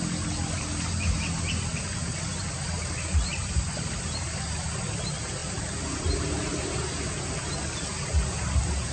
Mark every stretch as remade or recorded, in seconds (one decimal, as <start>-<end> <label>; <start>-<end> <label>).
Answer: 0.0-3.3 recorded; 3.3-4.2 remade; 4.2-5.4 recorded; 5.4-5.9 remade; 5.9-8.9 recorded